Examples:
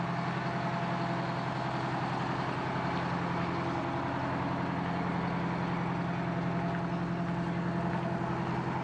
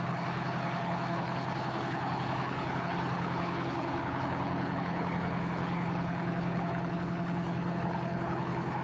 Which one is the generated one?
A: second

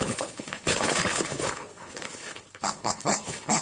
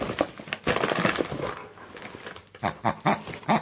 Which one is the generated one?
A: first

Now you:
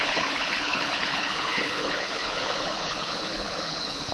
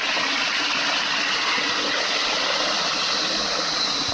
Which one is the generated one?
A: first